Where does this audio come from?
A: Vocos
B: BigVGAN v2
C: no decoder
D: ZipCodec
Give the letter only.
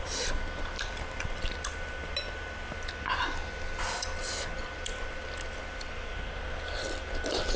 C